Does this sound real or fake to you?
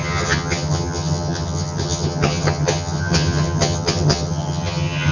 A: fake